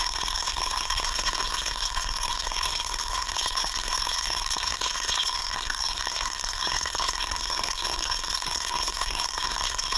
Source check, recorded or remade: remade